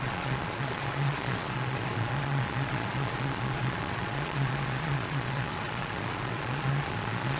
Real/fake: fake